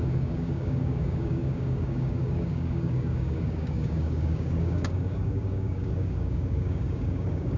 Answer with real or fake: fake